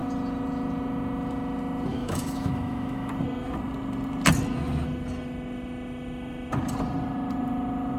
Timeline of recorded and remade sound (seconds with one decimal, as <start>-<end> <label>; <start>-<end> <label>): 0.0-1.9 recorded; 1.9-3.1 remade; 3.1-8.0 recorded